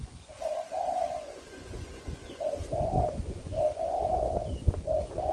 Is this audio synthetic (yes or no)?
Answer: yes